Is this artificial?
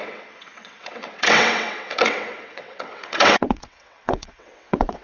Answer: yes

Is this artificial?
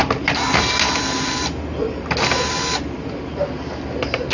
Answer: no